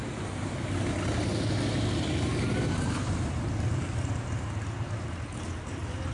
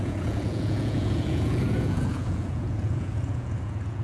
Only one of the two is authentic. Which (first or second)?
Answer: first